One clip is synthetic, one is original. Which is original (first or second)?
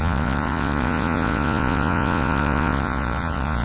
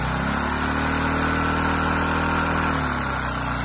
second